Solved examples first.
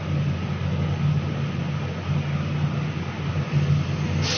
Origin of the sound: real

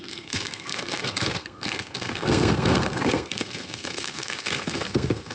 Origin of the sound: fake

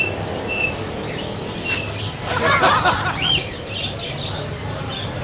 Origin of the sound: real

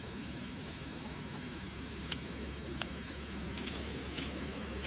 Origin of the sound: fake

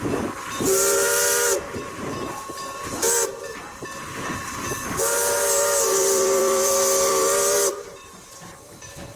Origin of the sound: fake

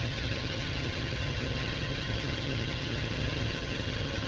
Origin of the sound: fake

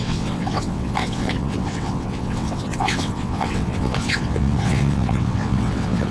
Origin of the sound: fake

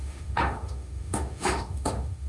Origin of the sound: fake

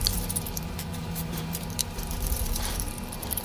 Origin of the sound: fake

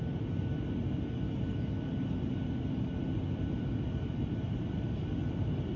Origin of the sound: real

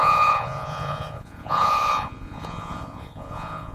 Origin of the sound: fake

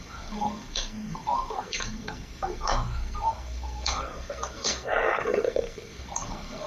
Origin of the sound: fake